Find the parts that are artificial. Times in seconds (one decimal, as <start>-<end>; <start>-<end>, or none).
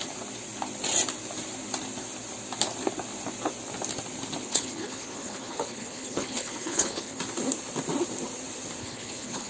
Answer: 4.4-7.2; 8.8-9.5